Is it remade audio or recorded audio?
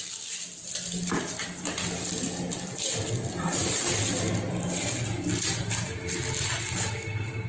recorded